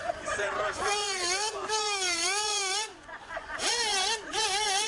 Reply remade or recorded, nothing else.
remade